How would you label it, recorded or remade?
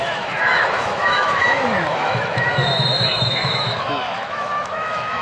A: remade